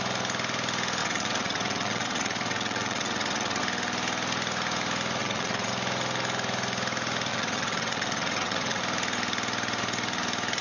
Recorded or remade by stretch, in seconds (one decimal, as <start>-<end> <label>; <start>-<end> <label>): 0.0-1.0 recorded; 1.0-3.6 remade; 3.6-5.2 recorded; 5.2-5.7 remade; 5.7-7.3 recorded; 7.3-8.8 remade; 8.8-10.6 recorded

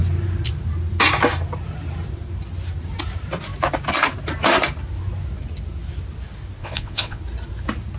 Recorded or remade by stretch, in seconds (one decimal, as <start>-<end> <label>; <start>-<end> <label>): 0.0-6.6 recorded; 6.6-7.2 remade; 7.2-8.0 recorded

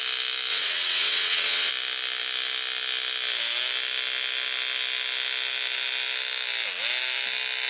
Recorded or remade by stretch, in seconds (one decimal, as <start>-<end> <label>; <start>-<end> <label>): 0.0-0.5 recorded; 0.5-1.7 remade; 1.7-7.7 recorded

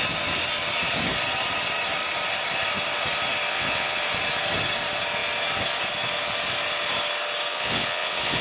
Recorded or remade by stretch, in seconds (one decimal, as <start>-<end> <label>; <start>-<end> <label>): 0.0-3.5 recorded; 3.5-4.0 remade; 4.0-7.5 recorded; 7.5-8.4 remade

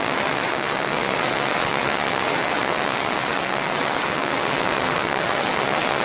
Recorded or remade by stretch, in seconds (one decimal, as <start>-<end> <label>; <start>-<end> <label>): 0.0-6.0 remade

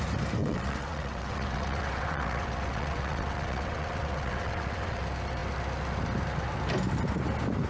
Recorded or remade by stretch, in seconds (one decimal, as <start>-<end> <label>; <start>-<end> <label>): 0.0-0.4 recorded; 0.4-5.0 remade; 5.0-7.7 recorded

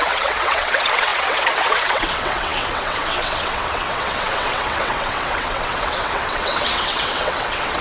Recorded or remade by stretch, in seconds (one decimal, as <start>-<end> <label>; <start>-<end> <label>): 0.0-7.8 remade

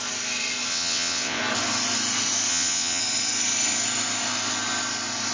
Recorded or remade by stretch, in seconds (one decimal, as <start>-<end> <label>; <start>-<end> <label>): 0.0-0.7 recorded; 0.7-1.4 remade; 1.4-2.5 recorded; 2.5-3.0 remade; 3.0-5.3 recorded